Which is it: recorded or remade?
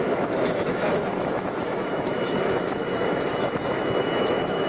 remade